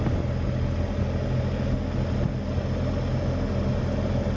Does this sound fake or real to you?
real